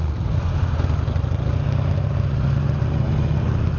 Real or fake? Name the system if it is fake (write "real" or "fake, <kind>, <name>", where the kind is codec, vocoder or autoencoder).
real